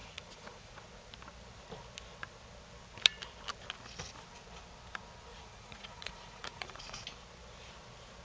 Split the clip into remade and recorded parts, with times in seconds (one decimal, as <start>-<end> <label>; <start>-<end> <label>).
0.0-0.8 remade; 0.8-5.3 recorded; 5.3-7.0 remade; 7.0-8.2 recorded